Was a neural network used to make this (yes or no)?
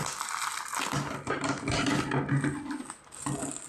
no